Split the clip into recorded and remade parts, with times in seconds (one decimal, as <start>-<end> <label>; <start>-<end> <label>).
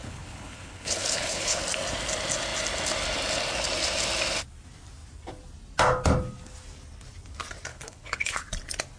0.0-1.6 remade; 1.6-7.7 recorded; 7.7-8.4 remade; 8.4-9.0 recorded